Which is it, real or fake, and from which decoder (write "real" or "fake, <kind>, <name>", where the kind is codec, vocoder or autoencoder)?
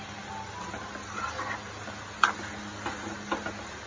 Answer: real